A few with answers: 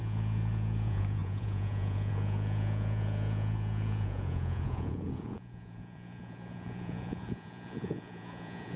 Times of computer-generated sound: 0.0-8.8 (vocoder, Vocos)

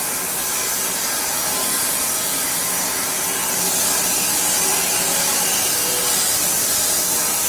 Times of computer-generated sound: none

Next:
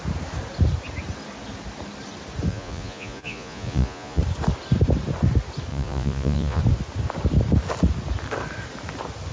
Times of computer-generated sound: 2.5-4.2 (vocoder, Vocos); 5.7-6.6